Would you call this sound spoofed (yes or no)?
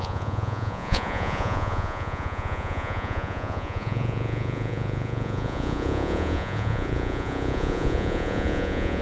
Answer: yes